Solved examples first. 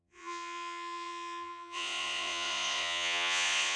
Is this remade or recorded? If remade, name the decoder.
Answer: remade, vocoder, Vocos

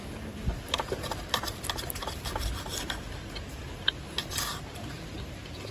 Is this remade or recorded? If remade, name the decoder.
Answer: recorded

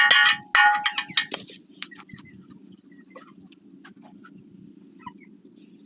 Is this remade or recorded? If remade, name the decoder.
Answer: recorded